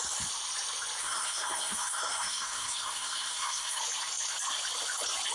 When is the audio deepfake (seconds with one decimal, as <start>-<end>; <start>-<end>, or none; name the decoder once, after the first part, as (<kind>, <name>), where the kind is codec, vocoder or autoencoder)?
1.0-3.8 (codec, SNAC)